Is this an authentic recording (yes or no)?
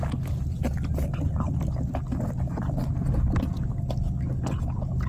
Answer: yes